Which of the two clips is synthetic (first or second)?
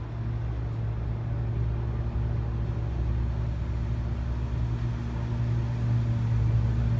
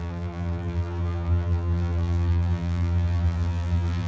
second